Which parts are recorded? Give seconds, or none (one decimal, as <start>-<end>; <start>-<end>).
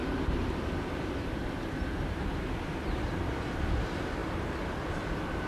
0.0-5.5